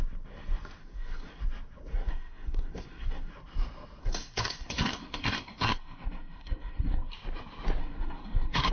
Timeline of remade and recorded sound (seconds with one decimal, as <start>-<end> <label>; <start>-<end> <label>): 0.0-0.8 recorded; 0.8-1.4 remade; 1.4-1.9 recorded; 1.9-3.3 remade; 3.3-4.0 recorded; 4.0-7.1 remade; 7.1-7.8 recorded; 7.8-8.7 remade